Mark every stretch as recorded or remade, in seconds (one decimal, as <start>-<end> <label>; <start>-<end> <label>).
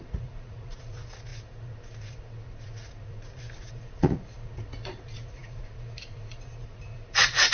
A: 0.0-7.5 remade